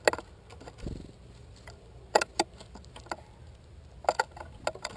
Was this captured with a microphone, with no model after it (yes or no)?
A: yes